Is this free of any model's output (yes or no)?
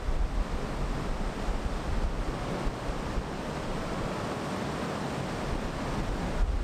yes